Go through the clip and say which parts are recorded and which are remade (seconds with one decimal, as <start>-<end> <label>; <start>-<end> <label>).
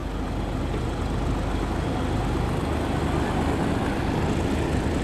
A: 0.0-5.0 recorded